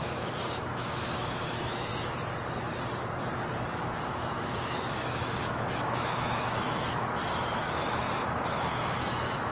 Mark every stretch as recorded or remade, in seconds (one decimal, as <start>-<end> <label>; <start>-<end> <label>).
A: 0.0-1.9 remade; 1.9-3.7 recorded; 3.7-9.5 remade